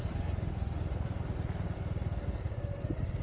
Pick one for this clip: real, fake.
real